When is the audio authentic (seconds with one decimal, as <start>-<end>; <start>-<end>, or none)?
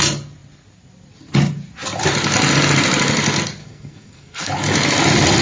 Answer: 0.0-3.6; 4.5-5.4